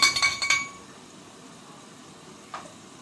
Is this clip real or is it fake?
real